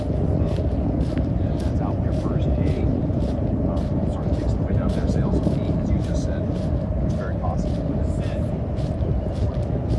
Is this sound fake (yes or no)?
no